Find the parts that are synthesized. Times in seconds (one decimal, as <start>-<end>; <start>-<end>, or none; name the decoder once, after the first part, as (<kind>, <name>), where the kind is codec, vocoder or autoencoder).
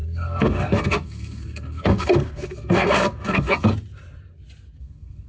0.0-3.7 (codec, SNAC); 4.8-5.3